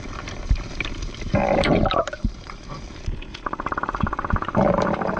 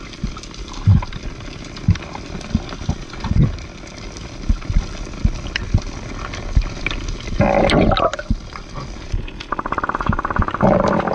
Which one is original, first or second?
second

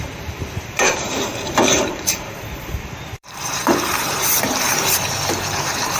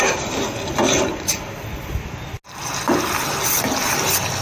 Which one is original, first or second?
second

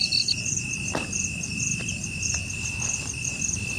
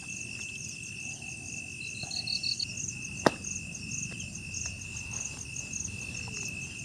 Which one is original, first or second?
second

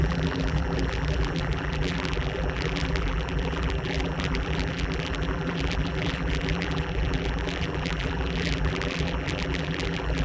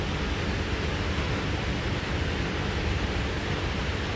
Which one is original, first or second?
second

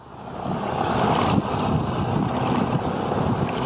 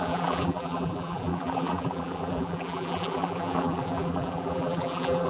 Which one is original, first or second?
first